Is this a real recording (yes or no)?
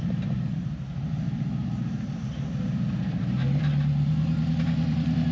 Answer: no